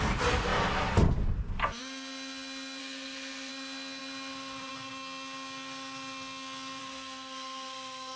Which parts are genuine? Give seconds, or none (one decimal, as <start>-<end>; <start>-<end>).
0.0-2.8; 3.5-6.8